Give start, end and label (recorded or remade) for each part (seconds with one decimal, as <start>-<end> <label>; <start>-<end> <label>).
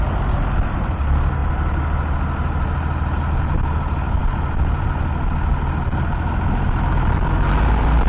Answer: 0.0-8.1 recorded